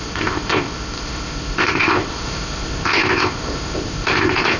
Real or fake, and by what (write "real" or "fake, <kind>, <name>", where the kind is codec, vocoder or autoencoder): fake, codec, ZipCodec